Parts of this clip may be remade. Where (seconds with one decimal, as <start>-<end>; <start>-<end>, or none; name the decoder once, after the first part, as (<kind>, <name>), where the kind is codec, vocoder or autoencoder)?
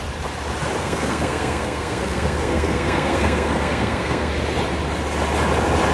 0.8-4.3 (codec, SNAC)